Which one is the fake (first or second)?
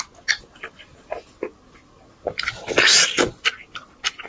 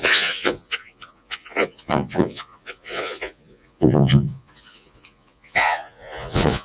second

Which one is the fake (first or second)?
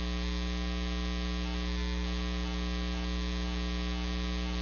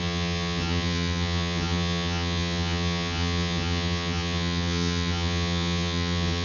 second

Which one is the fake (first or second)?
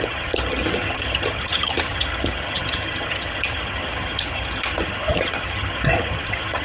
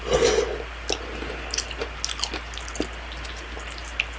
first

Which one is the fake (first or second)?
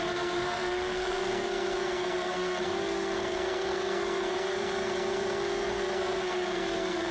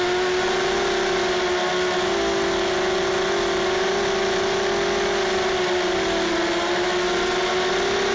first